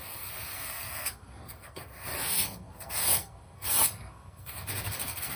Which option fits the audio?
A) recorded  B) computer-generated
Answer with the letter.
B